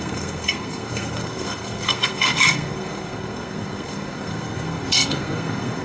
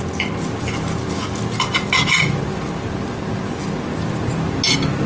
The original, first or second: second